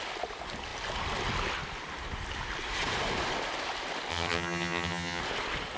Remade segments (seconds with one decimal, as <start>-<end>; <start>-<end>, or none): 4.1-5.2